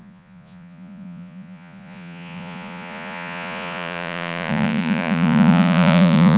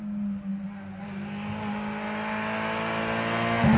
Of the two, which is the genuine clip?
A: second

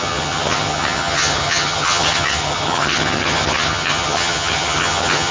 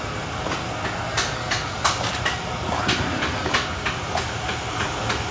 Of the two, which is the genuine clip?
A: second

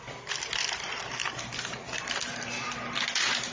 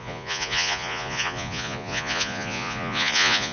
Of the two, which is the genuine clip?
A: first